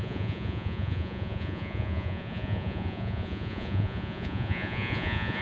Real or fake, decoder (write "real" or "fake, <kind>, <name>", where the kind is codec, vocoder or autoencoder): fake, vocoder, Vocos